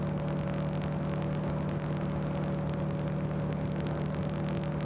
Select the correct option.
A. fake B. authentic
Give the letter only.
B